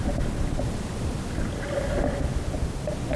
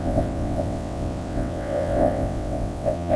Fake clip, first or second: second